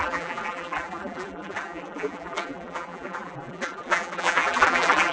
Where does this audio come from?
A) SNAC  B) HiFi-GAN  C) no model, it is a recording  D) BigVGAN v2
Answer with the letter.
D